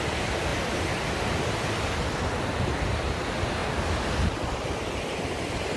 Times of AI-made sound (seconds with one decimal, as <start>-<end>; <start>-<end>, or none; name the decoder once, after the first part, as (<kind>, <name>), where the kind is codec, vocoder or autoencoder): none